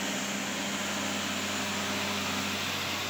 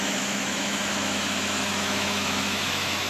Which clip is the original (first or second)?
first